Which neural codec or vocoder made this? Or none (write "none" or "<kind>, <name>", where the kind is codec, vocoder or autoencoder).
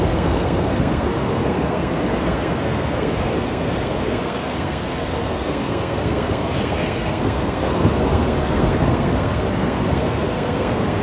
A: codec, SNAC